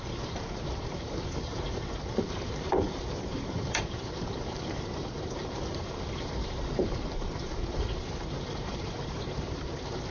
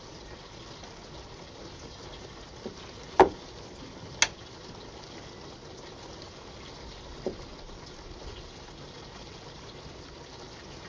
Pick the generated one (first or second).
first